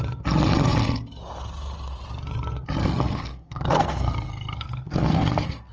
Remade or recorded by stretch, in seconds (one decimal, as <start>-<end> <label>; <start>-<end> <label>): 0.0-2.8 recorded; 2.8-5.7 remade